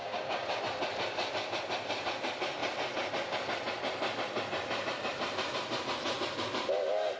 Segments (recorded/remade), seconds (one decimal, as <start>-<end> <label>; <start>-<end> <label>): 0.0-0.6 remade; 0.6-7.2 recorded